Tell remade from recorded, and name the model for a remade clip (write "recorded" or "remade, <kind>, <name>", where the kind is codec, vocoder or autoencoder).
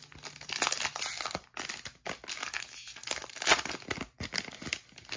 recorded